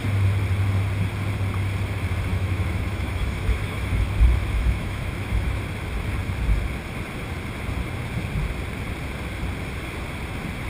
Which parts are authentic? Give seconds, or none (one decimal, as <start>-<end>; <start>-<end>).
0.0-2.3; 4.0-4.4; 5.6-10.7